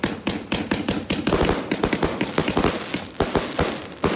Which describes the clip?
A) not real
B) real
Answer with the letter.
B